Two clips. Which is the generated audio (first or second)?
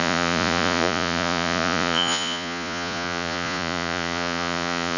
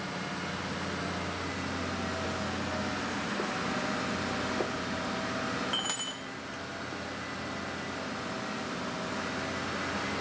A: first